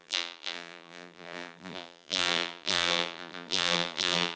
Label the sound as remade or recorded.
remade